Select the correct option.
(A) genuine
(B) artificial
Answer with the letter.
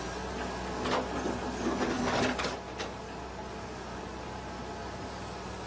A